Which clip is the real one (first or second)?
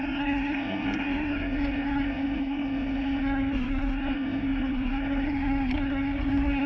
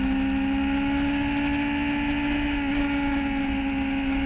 second